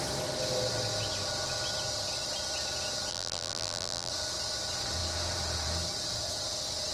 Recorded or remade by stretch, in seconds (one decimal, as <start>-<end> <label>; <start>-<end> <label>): 0.0-3.1 recorded; 3.1-4.1 remade; 4.1-6.9 recorded